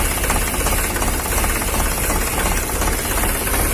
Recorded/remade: recorded